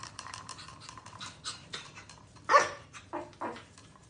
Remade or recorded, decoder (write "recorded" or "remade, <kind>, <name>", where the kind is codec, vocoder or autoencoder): remade, vocoder, BigVGAN v2